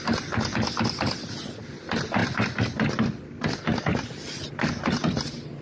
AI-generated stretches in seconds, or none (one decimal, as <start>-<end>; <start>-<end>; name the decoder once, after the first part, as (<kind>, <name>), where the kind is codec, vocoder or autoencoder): none